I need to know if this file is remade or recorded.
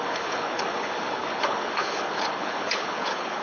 remade